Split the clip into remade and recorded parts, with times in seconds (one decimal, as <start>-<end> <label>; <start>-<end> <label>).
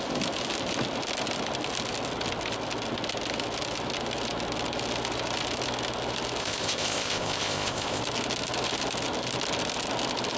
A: 0.0-6.4 recorded; 6.4-8.0 remade; 8.0-10.4 recorded